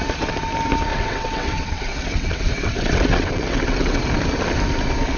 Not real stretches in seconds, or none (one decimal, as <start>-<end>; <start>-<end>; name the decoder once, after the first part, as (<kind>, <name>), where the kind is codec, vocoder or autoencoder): 0.9-4.0 (vocoder, WaveNeXt)